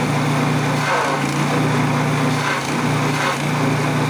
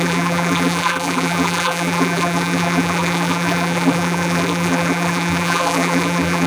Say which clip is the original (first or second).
first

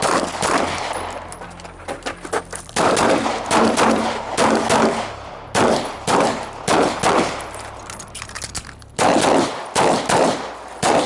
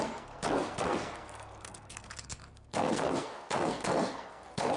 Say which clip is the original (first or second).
first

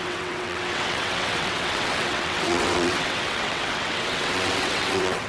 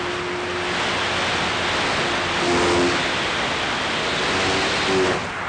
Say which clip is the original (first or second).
second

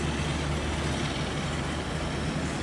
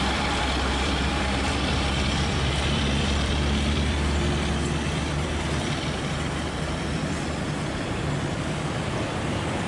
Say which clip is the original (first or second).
first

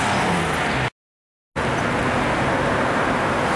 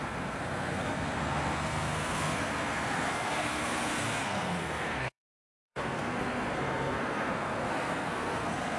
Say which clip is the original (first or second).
first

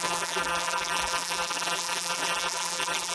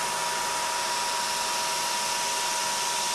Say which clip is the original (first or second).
second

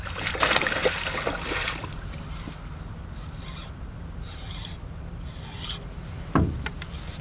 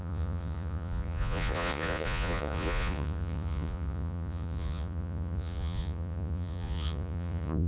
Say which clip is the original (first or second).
first